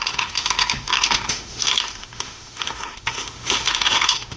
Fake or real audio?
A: fake